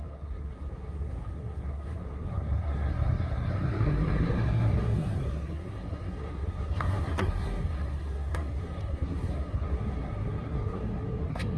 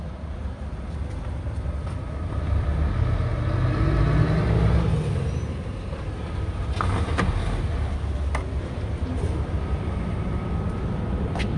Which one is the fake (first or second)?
first